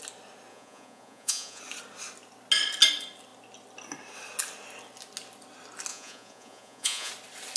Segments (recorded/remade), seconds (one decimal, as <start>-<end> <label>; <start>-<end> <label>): 0.0-0.5 recorded; 0.5-1.6 remade; 1.6-5.9 recorded; 5.9-7.1 remade; 7.1-7.6 recorded

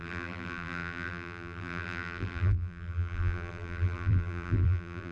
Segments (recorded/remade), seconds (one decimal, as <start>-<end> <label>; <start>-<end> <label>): 0.0-5.1 remade

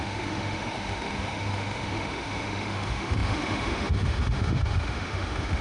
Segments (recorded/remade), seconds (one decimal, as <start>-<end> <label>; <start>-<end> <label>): 0.0-5.6 remade